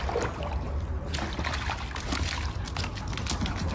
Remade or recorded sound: recorded